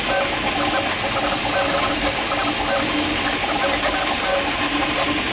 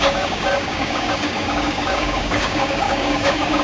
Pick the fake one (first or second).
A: second